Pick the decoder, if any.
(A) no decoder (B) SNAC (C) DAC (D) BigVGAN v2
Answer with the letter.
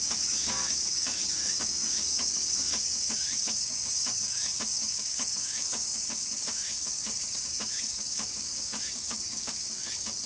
C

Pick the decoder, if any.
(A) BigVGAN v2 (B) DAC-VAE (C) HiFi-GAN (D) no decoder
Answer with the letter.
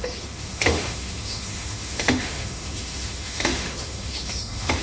B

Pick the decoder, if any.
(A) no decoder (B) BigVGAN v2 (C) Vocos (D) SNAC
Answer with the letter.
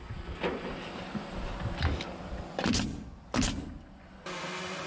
A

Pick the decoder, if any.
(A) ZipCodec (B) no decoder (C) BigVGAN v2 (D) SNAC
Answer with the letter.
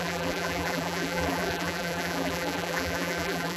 C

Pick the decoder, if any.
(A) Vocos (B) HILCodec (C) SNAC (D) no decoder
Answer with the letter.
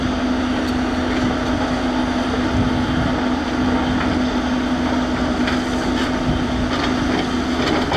D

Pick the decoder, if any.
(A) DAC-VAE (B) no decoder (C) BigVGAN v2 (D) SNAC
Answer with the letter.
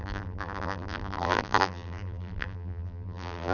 C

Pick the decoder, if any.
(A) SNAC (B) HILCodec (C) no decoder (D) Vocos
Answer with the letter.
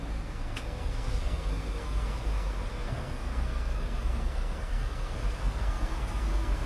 A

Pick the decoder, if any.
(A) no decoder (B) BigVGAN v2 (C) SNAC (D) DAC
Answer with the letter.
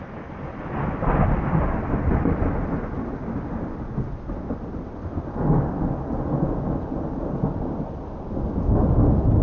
A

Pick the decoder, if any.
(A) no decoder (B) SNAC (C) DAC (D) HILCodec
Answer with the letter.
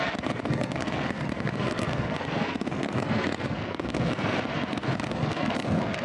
B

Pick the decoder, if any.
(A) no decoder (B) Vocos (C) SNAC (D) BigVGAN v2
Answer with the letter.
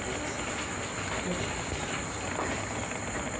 A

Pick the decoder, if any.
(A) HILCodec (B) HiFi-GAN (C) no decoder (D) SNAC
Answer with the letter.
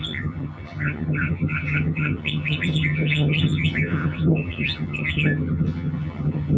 B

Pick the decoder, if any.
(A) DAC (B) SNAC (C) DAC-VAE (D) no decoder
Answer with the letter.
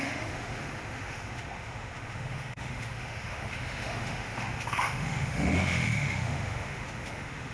C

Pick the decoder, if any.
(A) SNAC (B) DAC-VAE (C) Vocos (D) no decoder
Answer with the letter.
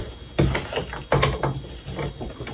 D